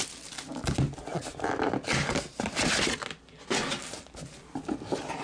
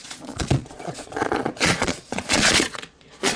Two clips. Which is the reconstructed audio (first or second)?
second